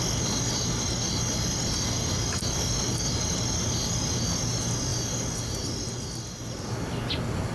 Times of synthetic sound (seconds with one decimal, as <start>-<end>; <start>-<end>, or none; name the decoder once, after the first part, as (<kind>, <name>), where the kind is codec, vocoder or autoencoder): none